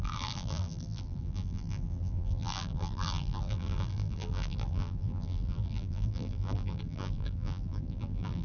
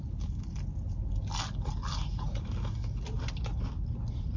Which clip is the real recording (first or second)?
second